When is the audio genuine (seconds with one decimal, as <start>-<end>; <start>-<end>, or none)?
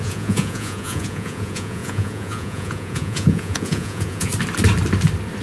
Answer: 4.3-5.4